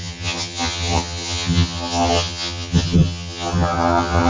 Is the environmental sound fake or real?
fake